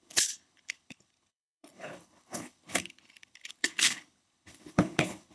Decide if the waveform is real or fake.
fake